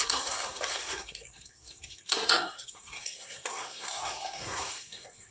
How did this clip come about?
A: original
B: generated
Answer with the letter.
B